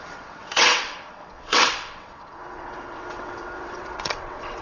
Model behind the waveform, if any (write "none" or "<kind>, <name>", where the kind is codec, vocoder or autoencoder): vocoder, WaveNeXt